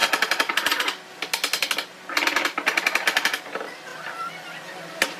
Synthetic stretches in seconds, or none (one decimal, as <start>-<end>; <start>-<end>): 0.0-0.7; 3.9-4.8